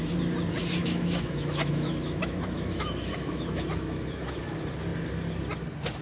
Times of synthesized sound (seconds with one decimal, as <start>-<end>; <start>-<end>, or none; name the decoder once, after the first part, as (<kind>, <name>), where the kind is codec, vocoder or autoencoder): 0.8-4.4 (autoencoder, DAC-VAE)